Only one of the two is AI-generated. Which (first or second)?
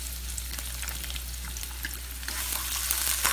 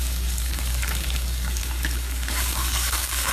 second